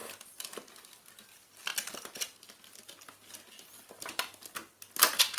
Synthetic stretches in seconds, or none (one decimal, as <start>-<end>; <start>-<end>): none